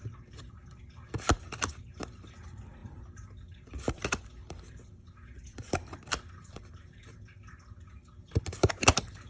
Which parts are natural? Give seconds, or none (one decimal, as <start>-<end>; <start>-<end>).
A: 0.0-2.8; 5.7-9.3